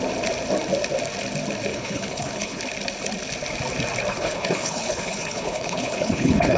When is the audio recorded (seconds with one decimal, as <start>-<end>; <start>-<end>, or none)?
0.0-1.7; 2.6-4.1